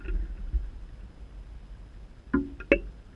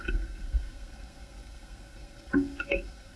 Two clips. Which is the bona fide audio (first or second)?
first